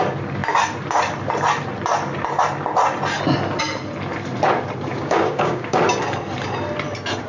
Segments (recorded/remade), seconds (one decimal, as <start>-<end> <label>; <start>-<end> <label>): 0.0-4.9 recorded; 4.9-5.8 remade; 5.8-7.3 recorded